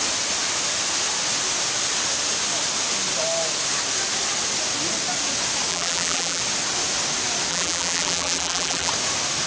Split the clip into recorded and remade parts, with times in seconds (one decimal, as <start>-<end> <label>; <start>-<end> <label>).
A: 0.0-5.7 recorded; 5.7-6.4 remade; 6.4-7.5 recorded; 7.5-8.9 remade; 8.9-9.5 recorded